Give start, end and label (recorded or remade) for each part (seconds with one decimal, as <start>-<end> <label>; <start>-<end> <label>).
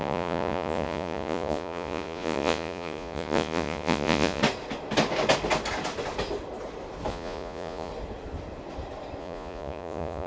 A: 0.0-4.4 remade; 4.4-7.1 recorded; 7.1-7.9 remade; 7.9-9.2 recorded; 9.2-10.3 remade